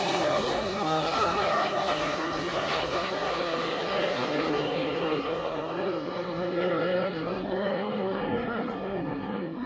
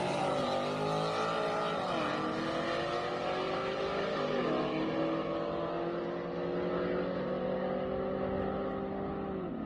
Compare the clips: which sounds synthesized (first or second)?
first